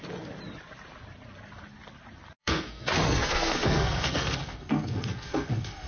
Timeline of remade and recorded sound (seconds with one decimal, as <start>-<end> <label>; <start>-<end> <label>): 0.0-2.4 recorded; 2.4-5.9 remade